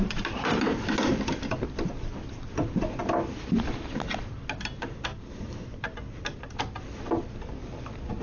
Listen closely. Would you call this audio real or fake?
real